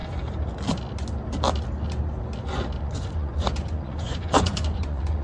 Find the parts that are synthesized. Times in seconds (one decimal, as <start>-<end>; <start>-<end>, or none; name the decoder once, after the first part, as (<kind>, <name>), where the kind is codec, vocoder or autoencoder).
2.8-5.2 (vocoder, Vocos)